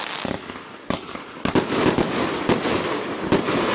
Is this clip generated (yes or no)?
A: no